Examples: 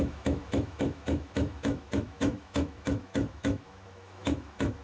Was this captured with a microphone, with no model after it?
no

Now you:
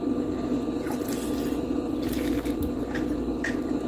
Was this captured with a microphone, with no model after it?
yes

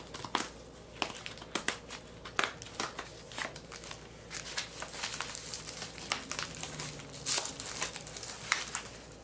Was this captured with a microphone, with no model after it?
yes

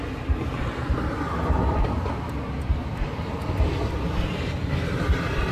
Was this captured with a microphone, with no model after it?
yes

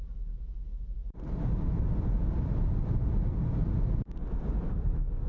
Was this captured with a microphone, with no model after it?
yes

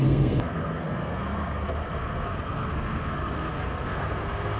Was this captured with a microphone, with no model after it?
no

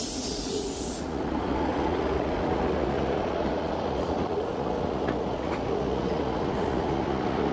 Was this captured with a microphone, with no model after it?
no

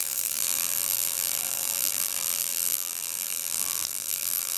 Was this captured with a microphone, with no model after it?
no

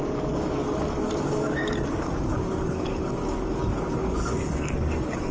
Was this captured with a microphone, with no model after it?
no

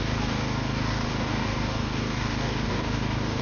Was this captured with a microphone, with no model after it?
no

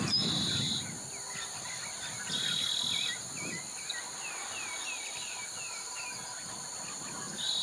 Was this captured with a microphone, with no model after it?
yes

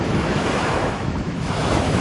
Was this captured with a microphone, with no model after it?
no